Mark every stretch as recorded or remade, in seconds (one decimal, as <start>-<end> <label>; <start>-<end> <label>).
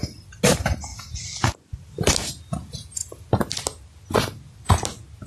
0.0-5.3 recorded